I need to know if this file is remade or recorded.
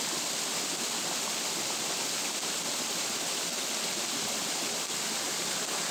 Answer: recorded